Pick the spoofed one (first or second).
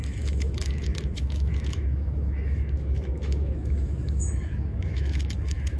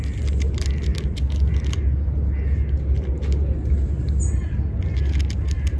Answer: first